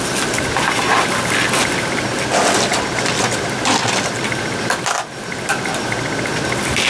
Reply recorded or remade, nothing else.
recorded